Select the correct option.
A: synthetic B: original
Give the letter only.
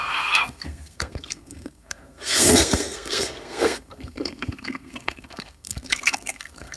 A